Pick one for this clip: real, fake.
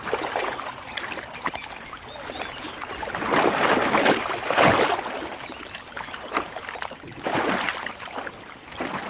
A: real